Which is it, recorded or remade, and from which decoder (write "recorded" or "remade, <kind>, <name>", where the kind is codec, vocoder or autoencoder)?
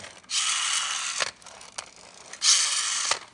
recorded